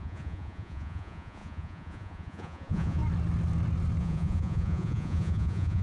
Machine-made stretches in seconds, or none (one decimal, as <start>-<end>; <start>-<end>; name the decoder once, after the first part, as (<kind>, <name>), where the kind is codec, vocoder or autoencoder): 0.0-3.0 (vocoder, Vocos); 4.0-5.8